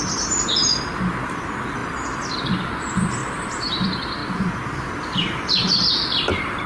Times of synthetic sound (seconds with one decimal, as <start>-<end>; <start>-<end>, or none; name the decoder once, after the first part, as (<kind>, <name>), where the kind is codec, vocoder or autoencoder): 0.0-1.8 (vocoder, BigVGAN v2); 2.3-3.2; 3.7-6.7